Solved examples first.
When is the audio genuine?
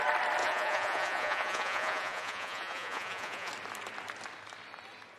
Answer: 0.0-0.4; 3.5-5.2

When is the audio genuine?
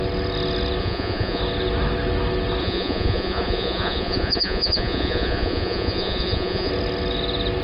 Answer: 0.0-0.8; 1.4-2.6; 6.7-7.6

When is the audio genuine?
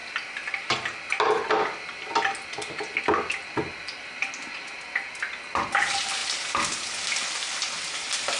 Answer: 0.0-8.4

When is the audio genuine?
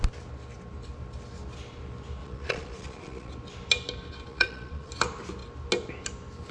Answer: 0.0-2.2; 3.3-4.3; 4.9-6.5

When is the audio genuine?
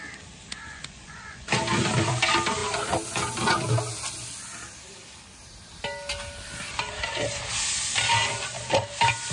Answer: 0.0-0.5; 1.5-9.3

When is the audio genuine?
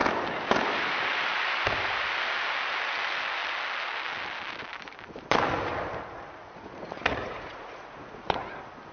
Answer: 0.0-6.4; 8.5-8.9